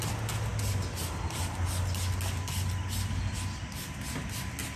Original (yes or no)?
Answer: yes